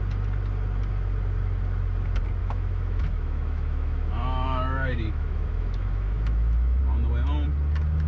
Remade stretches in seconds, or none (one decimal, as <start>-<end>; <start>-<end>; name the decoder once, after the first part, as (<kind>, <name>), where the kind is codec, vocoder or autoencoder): 2.4-6.8 (autoencoder, DAC-VAE)